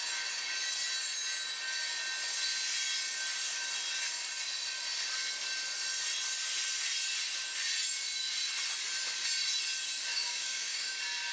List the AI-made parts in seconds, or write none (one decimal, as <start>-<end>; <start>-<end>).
10.1-10.9